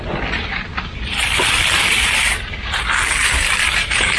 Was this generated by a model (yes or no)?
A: yes